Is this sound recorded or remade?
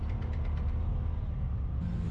recorded